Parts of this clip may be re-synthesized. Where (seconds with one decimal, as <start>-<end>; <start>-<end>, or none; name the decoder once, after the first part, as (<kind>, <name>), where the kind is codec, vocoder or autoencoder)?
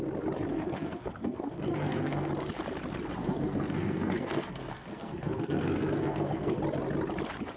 0.5-2.3 (codec, SNAC); 3.2-6.6